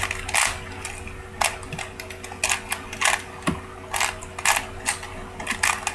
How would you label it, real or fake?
real